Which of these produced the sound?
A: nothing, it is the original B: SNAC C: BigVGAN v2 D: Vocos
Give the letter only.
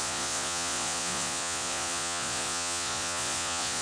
D